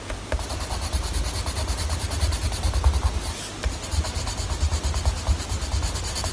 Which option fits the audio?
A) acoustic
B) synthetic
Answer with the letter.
A